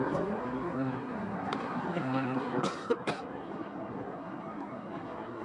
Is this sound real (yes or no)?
no